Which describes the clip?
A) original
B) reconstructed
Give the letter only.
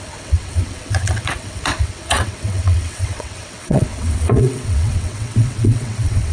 B